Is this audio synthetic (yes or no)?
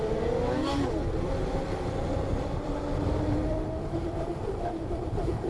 yes